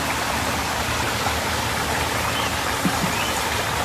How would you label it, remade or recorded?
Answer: recorded